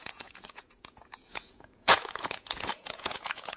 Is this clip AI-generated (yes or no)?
yes